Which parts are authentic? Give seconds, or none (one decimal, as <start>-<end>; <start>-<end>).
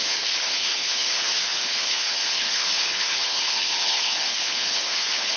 none